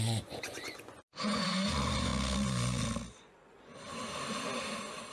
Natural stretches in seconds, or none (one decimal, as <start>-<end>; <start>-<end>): 2.1-3.2; 3.7-5.1